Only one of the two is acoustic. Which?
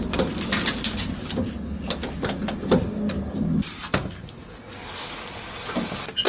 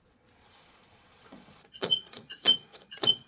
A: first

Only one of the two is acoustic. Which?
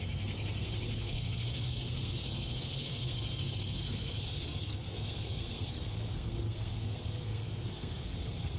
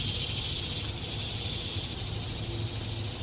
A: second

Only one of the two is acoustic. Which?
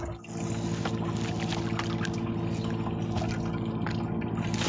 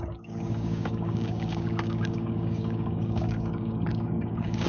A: first